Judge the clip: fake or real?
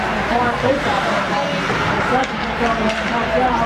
fake